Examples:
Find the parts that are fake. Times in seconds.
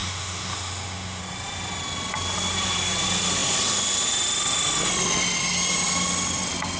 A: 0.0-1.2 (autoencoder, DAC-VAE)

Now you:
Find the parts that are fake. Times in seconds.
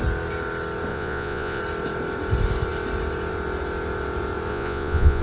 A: 0.9-1.6 (vocoder, Vocos); 4.5-5.2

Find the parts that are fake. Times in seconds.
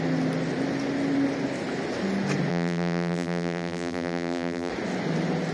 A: 2.5-4.7 (vocoder, BigVGAN v2)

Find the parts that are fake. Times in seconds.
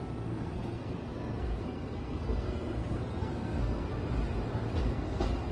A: 0.0-3.9 (codec, SNAC); 4.8-5.5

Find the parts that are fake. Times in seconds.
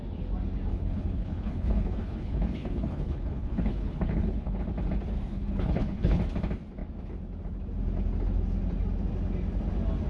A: 0.7-4.6 (codec, HILCodec); 5.3-6.2